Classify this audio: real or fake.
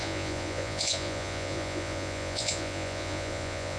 fake